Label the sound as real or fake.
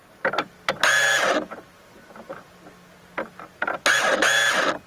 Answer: real